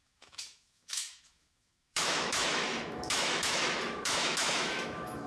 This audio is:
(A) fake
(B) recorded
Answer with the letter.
A